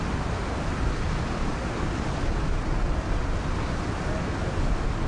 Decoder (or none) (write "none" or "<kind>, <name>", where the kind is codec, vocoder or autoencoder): none